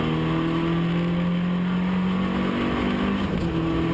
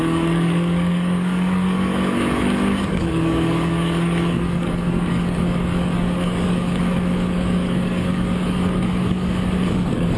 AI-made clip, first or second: second